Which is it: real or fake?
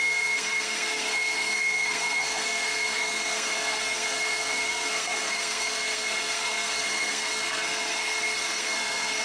fake